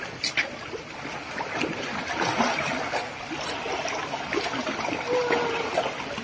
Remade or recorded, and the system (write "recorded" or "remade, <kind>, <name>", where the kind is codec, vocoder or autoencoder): recorded